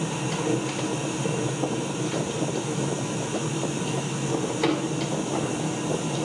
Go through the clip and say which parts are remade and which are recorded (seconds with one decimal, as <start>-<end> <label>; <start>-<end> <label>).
0.0-6.2 recorded

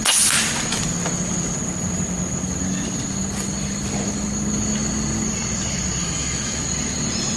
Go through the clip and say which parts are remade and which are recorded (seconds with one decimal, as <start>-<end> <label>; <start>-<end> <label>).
0.0-6.0 recorded; 6.0-6.6 remade; 6.6-7.4 recorded

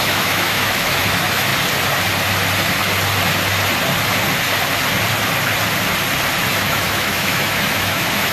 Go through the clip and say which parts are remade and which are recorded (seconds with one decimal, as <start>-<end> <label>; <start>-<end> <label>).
0.0-1.5 remade; 1.5-6.5 recorded; 6.5-8.3 remade

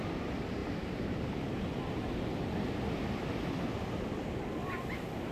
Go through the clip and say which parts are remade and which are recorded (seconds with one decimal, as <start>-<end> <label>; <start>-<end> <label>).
0.0-5.3 recorded

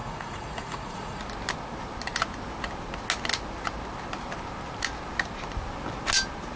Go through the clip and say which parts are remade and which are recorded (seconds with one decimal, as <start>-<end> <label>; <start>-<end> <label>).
0.0-1.2 remade; 1.2-6.6 recorded